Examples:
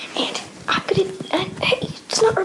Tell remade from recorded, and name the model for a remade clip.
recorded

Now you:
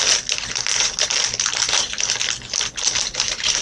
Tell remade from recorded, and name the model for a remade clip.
recorded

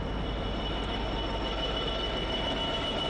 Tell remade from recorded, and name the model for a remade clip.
recorded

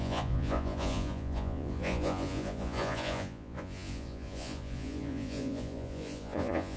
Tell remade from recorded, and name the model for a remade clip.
remade, vocoder, Vocos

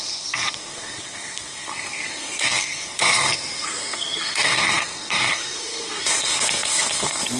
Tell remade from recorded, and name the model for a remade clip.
remade, codec, SNAC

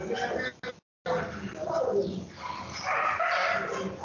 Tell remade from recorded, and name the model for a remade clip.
recorded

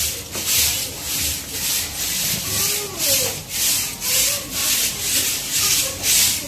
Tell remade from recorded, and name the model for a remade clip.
recorded